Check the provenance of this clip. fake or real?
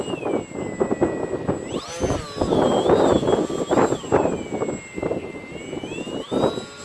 real